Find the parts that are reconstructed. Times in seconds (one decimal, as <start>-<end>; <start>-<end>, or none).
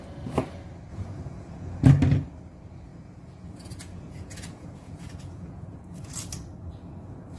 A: 0.9-1.9; 2.9-6.2